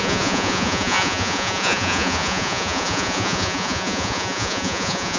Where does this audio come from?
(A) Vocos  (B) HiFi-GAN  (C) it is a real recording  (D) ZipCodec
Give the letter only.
A